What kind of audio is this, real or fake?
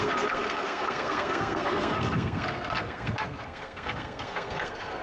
fake